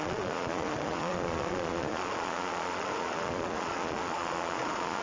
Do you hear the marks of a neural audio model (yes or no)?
yes